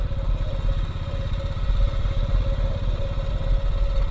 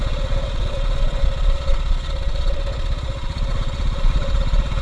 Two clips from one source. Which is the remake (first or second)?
second